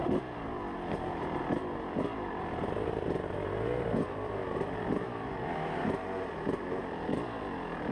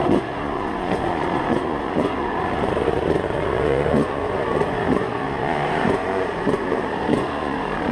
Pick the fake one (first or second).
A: second